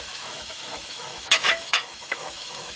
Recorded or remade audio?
remade